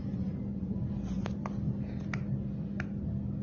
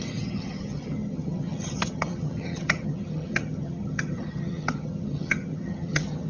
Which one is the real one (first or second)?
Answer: first